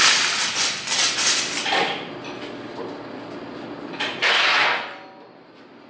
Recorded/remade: recorded